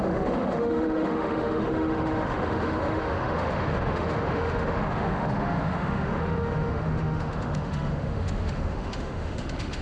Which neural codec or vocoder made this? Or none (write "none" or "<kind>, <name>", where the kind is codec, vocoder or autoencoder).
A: autoencoder, DAC-VAE